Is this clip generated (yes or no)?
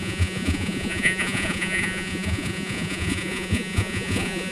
yes